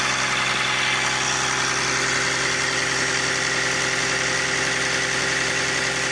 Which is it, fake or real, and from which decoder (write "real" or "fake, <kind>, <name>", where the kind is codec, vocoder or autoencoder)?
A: real